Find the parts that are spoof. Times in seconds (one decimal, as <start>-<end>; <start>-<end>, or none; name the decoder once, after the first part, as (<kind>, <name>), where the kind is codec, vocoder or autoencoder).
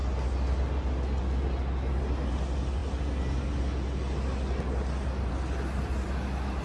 none